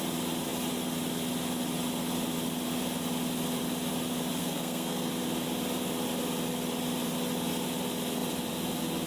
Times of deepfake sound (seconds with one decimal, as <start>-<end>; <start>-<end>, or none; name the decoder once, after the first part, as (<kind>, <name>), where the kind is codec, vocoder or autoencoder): 4.4-5.1 (codec, SNAC)